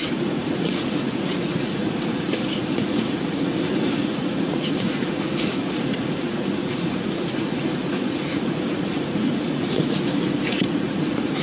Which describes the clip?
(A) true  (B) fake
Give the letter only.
B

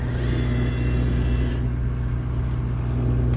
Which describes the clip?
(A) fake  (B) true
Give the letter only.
B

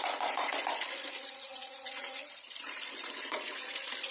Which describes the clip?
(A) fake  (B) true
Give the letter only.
A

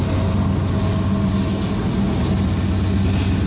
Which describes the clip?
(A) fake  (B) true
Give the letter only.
B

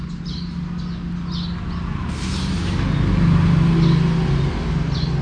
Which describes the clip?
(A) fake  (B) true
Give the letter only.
B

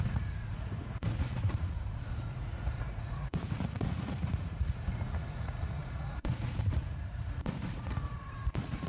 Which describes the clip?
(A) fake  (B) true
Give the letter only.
A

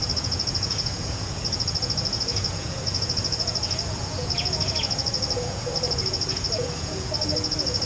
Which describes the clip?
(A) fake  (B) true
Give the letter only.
A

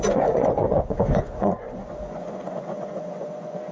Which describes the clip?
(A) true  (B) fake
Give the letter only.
B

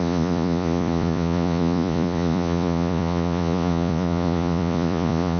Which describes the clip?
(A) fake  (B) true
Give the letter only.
A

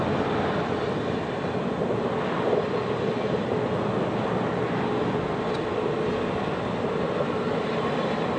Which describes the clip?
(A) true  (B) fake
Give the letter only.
A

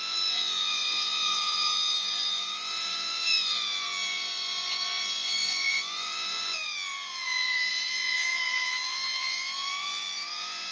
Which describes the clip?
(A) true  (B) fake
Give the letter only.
B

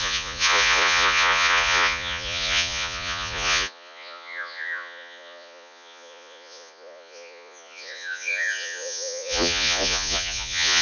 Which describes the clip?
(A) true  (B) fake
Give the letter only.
B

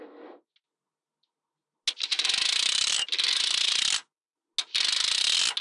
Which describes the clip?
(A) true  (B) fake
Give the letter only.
A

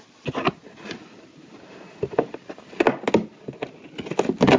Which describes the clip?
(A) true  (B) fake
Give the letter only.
A